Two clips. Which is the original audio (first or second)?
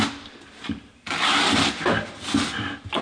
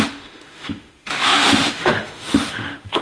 first